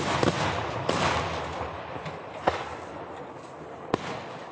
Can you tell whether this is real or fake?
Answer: real